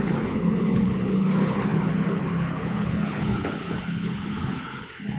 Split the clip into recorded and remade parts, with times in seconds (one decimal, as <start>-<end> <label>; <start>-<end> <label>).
0.0-5.2 remade